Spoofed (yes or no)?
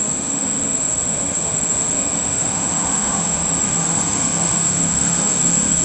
yes